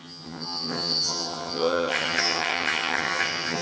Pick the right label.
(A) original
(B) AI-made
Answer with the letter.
B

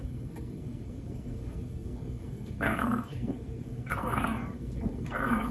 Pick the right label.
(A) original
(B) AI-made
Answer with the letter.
B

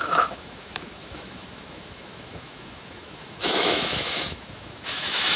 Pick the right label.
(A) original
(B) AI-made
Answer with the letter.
B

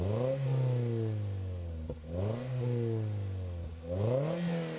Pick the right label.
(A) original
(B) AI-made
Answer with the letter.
A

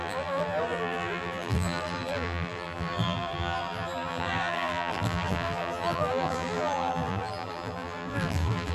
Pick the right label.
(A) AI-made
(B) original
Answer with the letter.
A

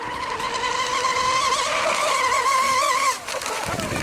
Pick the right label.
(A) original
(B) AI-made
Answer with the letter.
B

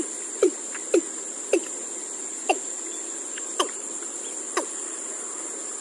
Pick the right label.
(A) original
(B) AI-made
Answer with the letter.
B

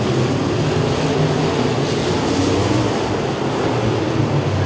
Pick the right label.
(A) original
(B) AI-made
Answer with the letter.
A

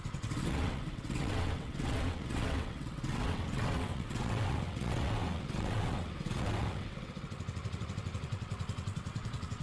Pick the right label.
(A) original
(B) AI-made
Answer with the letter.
B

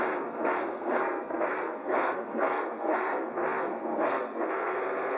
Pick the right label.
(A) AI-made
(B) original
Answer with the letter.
A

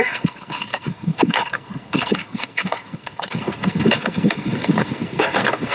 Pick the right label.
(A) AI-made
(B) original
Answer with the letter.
A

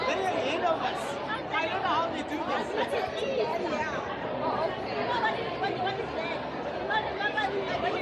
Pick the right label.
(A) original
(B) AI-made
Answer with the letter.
B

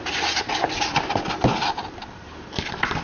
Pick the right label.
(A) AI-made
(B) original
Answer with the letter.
B